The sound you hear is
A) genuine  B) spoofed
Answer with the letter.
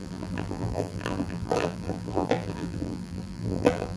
B